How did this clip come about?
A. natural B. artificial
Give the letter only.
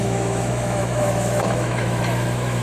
B